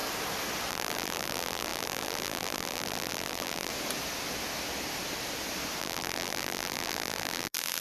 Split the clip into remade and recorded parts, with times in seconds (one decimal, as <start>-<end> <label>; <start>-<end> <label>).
0.0-0.7 recorded; 0.7-3.7 remade; 3.7-5.8 recorded; 5.8-7.8 remade